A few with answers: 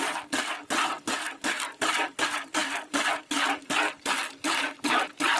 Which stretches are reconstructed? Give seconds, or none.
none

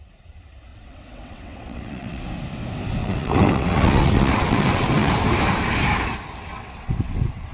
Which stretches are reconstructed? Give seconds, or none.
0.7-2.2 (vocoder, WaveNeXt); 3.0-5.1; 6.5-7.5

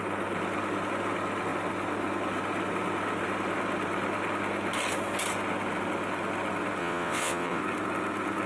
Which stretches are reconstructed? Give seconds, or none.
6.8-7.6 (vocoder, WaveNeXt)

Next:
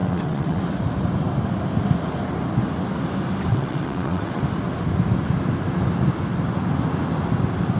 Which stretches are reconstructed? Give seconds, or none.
0.0-0.6 (vocoder, WaveNeXt); 3.5-4.4

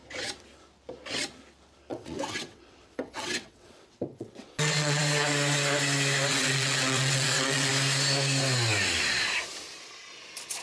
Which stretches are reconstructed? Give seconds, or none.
1.9-5.0 (vocoder, WaveNeXt); 6.3-7.7